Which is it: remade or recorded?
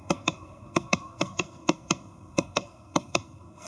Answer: remade